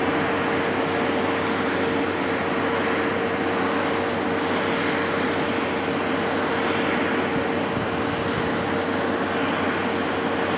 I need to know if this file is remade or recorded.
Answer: recorded